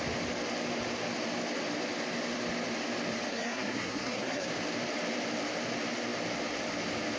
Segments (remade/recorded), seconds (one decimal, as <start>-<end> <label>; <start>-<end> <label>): 0.0-3.3 recorded; 3.3-4.5 remade; 4.5-7.2 recorded